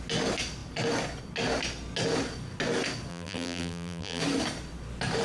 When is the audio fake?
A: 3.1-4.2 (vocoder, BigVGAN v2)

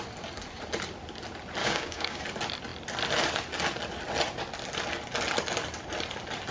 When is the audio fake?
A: 1.6-2.2 (codec, DAC)

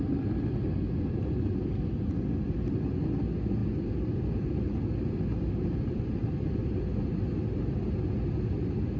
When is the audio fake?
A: none

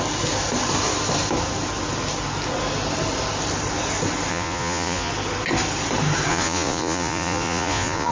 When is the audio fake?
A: 4.3-5.1 (vocoder, Vocos); 6.3-8.1

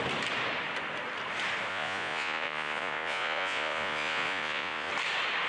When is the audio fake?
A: 1.7-4.9 (vocoder, Vocos)